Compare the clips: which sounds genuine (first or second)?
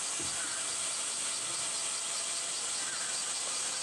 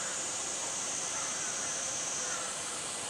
first